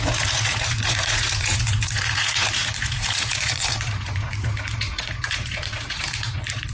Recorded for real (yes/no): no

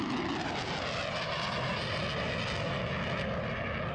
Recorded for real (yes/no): yes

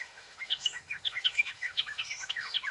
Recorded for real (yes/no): no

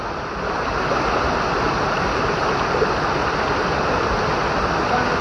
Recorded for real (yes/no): yes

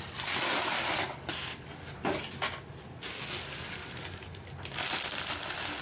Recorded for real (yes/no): yes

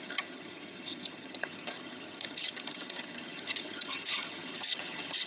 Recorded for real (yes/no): no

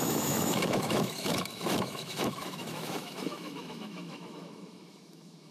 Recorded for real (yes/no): no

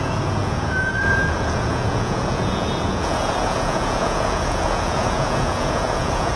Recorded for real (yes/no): no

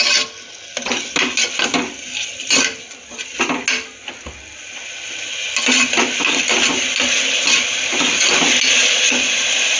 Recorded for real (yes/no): yes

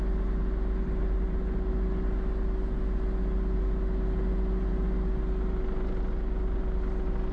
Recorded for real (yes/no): yes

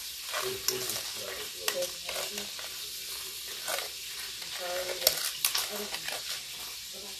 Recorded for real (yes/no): yes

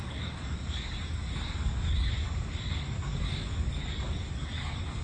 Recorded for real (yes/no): no